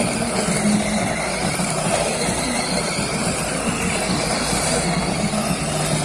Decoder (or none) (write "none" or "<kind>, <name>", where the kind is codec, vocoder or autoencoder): none